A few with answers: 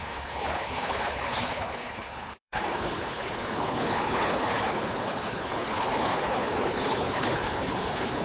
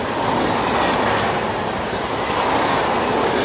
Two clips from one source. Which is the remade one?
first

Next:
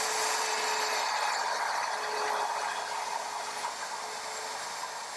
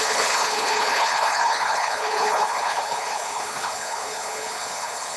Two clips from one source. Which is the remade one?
second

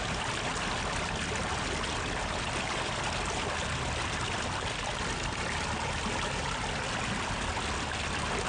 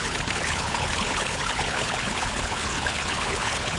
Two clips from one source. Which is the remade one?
second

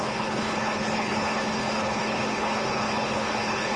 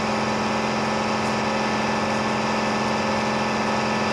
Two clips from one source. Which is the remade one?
first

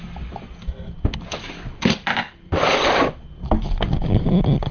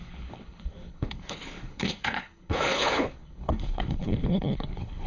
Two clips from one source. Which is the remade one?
second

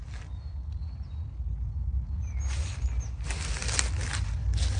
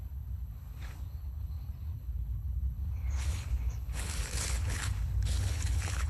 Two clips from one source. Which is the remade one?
second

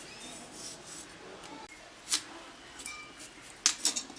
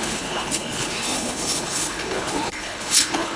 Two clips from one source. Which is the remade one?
second